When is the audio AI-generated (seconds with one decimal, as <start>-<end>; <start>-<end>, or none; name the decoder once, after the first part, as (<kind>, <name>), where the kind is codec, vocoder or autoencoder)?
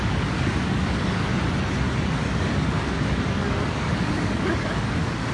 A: 0.0-1.3 (codec, DAC); 1.9-5.3